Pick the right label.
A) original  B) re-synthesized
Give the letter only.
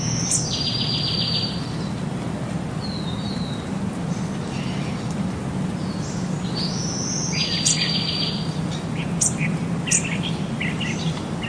A